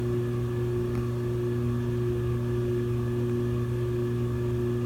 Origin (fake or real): real